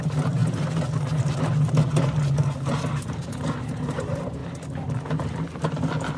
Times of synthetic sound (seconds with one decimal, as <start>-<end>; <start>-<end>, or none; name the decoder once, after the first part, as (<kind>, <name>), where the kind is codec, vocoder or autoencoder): 0.0-0.4 (vocoder, BigVGAN v2); 3.6-4.4